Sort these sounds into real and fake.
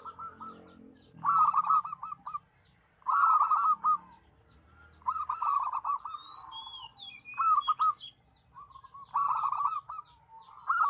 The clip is real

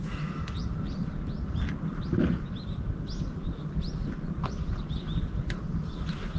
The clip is real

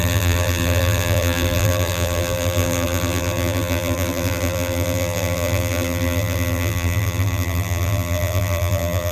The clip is fake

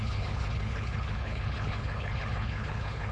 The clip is fake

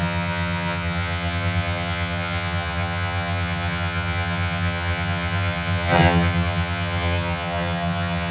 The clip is fake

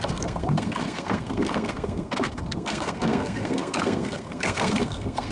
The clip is fake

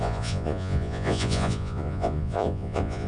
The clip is fake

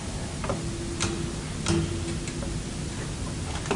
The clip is real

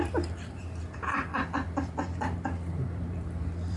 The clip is fake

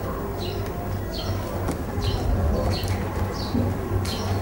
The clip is real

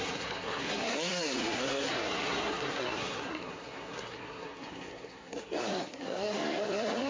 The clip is fake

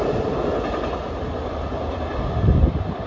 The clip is real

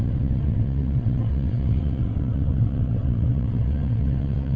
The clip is fake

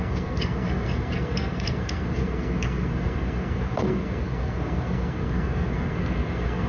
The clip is fake